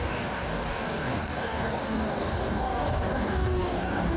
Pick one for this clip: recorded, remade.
remade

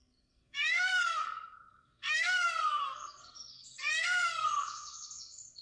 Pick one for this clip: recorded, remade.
remade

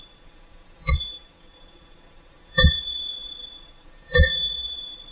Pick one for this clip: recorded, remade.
remade